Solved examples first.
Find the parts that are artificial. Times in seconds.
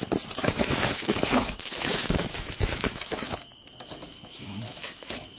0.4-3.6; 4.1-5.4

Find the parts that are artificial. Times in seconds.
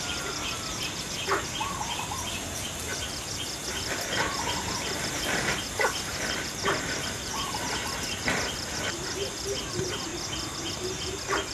0.0-10.1; 10.6-11.5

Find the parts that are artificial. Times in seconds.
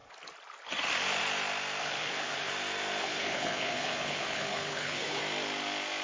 1.8-2.5; 3.0-5.2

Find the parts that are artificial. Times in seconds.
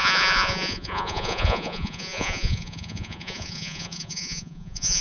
0.0-5.0